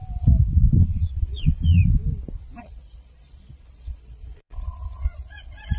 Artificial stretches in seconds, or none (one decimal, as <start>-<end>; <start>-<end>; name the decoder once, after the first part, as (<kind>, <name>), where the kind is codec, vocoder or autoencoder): 0.8-1.8 (vocoder, Vocos); 2.6-5.8

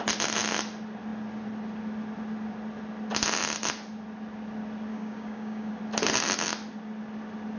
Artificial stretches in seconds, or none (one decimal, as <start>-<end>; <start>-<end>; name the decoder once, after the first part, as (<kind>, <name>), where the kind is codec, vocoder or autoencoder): 4.9-5.7 (codec, DAC)

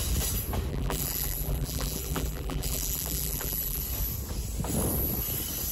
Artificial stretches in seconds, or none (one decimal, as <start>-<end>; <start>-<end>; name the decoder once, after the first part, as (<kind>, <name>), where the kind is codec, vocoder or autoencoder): 0.7-3.8 (vocoder, BigVGAN v2)

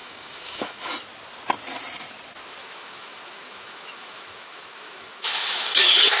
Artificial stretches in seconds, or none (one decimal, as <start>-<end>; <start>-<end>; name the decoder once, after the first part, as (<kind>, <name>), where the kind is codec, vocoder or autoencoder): 0.0-0.9 (autoencoder, DAC-VAE); 2.6-6.2

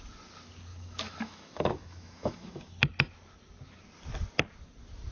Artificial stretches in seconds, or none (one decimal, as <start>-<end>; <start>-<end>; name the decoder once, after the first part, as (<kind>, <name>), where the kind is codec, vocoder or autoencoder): 0.7-2.7 (autoencoder, DAC-VAE)

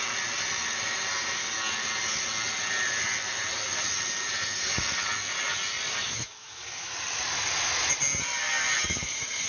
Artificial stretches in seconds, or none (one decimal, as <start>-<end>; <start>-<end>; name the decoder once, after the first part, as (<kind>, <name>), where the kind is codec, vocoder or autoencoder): 6.0-6.9 (autoencoder, DAC-VAE)

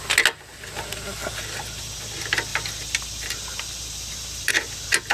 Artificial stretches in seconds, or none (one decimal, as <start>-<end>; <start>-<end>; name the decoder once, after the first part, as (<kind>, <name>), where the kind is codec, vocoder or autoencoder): 0.5-1.4 (vocoder, BigVGAN v2); 2.5-4.5